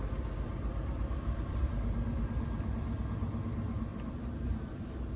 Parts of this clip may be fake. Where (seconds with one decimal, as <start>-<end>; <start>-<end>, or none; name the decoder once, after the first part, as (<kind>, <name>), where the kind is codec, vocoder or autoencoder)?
0.5-3.0 (vocoder, BigVGAN v2); 3.9-4.6